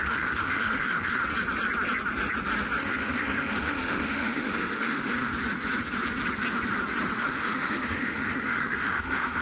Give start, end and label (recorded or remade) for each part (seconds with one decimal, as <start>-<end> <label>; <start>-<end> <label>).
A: 0.0-1.2 remade; 1.2-2.8 recorded; 2.8-5.3 remade; 5.3-7.2 recorded; 7.2-9.4 remade